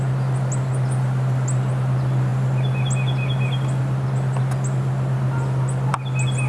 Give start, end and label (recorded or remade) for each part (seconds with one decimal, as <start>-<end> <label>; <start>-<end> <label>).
0.0-6.5 recorded